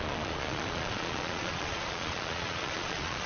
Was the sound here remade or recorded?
remade